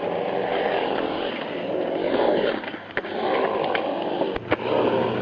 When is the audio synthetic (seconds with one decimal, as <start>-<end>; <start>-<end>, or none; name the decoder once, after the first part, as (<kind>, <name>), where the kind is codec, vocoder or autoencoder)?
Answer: 0.5-1.3 (codec, DAC); 2.0-2.6